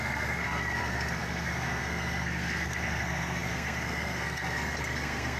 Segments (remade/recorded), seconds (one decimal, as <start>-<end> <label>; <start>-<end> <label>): 0.0-5.4 remade